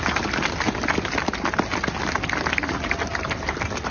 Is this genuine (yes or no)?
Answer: yes